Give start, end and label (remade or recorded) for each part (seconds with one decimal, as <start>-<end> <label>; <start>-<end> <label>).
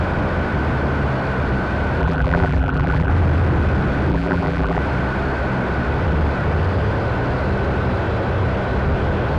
0.0-2.0 recorded; 2.0-3.1 remade; 3.1-4.1 recorded; 4.1-4.8 remade; 4.8-9.4 recorded